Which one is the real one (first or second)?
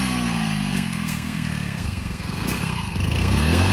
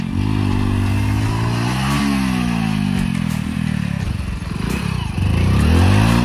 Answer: second